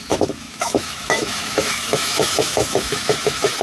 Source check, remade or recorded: remade